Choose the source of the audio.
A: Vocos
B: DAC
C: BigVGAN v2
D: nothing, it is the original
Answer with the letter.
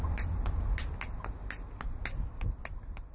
D